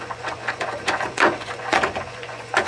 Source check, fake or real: fake